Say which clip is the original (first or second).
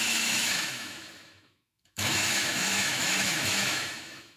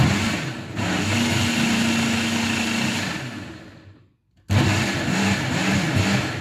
second